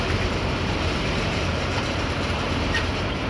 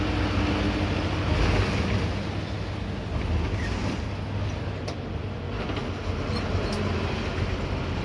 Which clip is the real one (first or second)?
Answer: second